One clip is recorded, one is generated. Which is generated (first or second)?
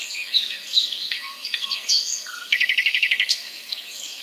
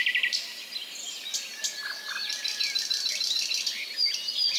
first